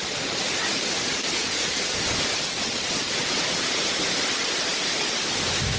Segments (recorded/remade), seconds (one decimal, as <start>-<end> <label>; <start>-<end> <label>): 0.0-1.4 recorded; 1.4-2.0 remade; 2.0-3.0 recorded; 3.0-3.9 remade; 3.9-5.8 recorded